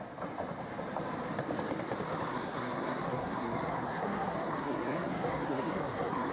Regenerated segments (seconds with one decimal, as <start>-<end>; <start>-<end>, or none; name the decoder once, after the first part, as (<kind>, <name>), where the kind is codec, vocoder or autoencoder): 2.3-6.3 (codec, SNAC)